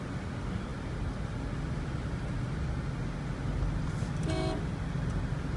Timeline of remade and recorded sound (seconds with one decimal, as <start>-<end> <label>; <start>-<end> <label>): 0.0-5.6 recorded